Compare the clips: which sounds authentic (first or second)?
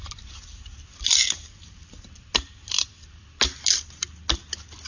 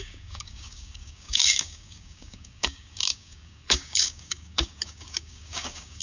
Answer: first